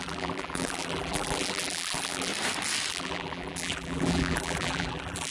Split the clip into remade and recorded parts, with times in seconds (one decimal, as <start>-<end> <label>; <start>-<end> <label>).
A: 0.0-2.3 remade; 2.3-2.9 recorded; 2.9-5.3 remade